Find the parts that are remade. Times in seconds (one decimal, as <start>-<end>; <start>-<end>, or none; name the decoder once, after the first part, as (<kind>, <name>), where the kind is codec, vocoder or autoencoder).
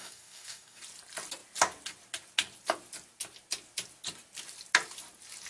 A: 0.0-0.8 (codec, DAC)